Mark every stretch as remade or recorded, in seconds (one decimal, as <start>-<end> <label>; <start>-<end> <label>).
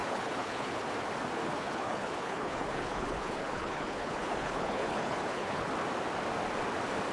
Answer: 0.0-0.8 remade; 0.8-1.4 recorded; 1.4-5.7 remade; 5.7-7.1 recorded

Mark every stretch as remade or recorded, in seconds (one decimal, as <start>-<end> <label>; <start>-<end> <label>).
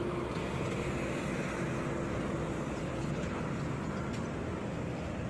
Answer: 0.0-2.8 recorded; 2.8-3.4 remade; 3.4-5.3 recorded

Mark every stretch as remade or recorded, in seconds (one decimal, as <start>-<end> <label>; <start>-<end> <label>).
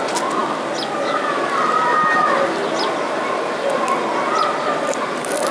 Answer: 0.0-5.5 recorded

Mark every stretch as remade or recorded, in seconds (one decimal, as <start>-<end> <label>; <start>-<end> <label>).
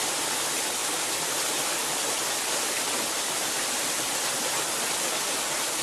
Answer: 0.0-5.8 recorded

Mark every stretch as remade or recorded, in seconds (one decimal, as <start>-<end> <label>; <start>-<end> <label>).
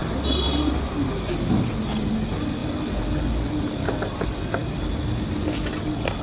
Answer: 0.0-6.2 recorded